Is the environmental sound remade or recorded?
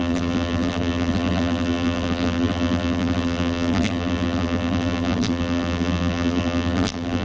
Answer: remade